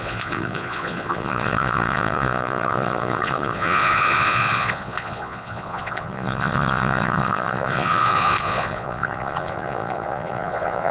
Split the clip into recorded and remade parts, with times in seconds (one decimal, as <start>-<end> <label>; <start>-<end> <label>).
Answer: 0.0-10.9 remade